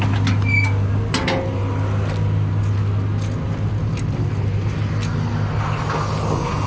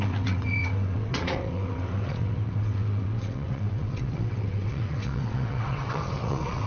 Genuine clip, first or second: first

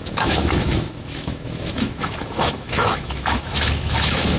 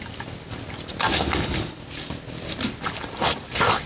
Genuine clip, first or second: second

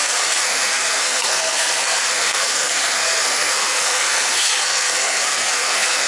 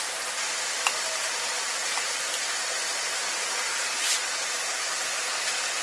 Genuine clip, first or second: second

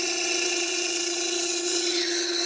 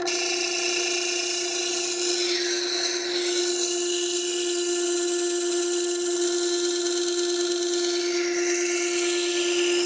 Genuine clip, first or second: second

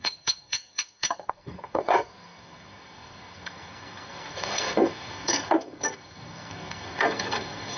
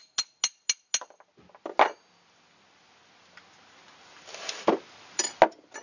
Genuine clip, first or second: second